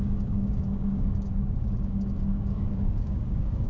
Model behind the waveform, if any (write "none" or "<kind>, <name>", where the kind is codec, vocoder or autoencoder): codec, DAC